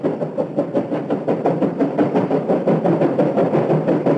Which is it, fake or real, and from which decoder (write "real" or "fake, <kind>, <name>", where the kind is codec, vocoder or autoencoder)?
real